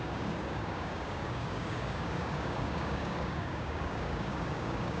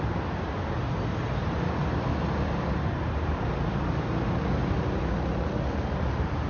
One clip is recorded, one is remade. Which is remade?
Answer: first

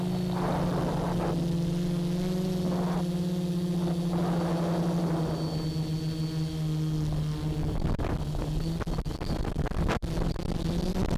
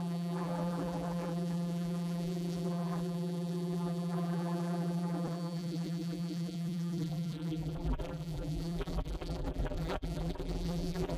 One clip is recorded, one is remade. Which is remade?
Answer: second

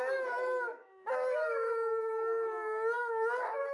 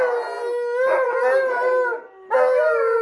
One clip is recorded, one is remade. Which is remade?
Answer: first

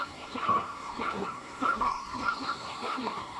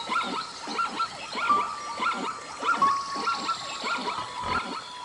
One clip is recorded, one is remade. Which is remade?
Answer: first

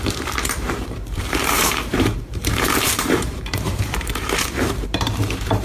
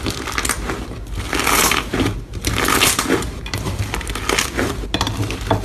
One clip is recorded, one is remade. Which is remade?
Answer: first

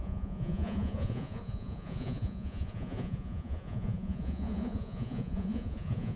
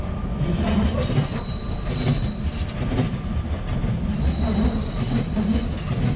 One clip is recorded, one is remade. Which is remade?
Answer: first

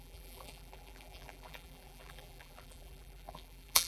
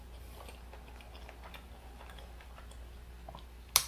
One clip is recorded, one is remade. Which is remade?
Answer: first